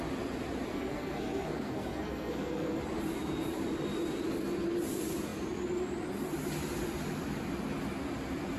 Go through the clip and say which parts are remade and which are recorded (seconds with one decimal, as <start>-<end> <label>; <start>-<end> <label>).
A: 0.0-0.7 recorded; 0.7-2.8 remade; 2.8-8.6 recorded

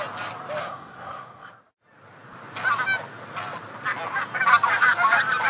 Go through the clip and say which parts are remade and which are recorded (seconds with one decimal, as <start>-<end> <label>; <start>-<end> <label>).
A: 0.0-0.6 recorded; 0.6-1.5 remade; 1.5-5.5 recorded

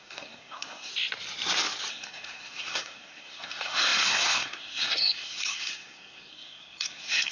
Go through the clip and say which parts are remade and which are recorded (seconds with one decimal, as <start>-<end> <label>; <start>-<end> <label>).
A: 0.0-0.9 remade; 0.9-1.9 recorded; 1.9-7.3 remade

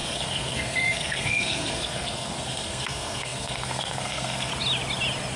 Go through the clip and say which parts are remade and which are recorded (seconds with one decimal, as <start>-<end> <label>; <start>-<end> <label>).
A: 0.0-4.5 remade; 4.5-5.4 recorded

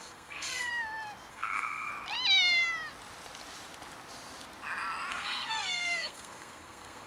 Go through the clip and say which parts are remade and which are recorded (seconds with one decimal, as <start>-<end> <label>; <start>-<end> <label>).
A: 0.0-0.7 remade; 0.7-1.3 recorded; 1.3-1.9 remade; 1.9-5.1 recorded; 5.1-7.1 remade

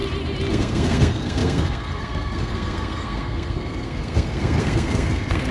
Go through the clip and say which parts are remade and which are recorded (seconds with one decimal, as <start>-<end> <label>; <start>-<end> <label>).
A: 0.0-0.5 recorded; 0.5-5.5 remade